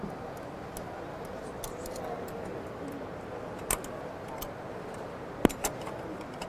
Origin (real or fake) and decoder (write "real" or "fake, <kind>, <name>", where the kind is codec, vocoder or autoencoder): real